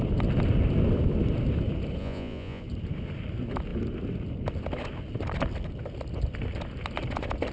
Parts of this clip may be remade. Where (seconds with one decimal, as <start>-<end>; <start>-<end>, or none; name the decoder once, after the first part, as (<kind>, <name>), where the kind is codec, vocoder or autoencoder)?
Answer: 2.0-2.6 (vocoder, Vocos)